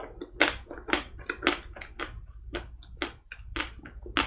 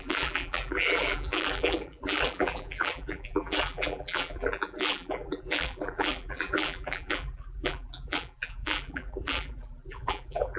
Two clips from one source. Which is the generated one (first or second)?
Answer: second